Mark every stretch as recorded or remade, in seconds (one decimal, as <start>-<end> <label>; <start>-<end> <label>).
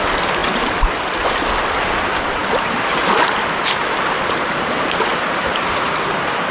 0.0-2.4 recorded; 2.4-3.2 remade; 3.2-5.1 recorded; 5.1-6.5 remade